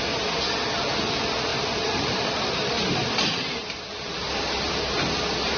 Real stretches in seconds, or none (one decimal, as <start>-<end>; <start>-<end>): 0.0-1.5; 3.8-5.6